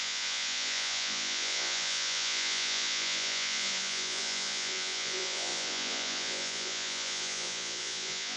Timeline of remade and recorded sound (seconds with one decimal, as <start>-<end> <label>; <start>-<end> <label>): 0.0-8.4 remade